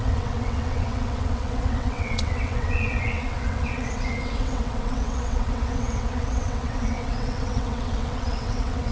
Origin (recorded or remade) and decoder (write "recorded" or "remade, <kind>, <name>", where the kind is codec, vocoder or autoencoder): remade, vocoder, WaveNeXt